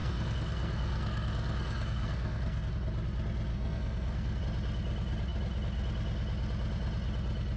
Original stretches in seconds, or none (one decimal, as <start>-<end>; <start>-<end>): 2.7-3.5; 4.4-7.6